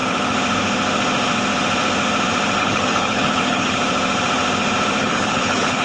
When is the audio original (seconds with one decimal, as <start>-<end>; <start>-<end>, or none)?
0.0-2.6; 3.8-5.0